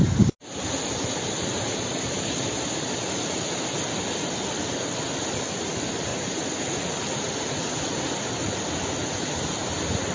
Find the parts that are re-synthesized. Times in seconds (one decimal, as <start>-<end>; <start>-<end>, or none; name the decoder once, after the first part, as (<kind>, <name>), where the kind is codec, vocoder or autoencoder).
none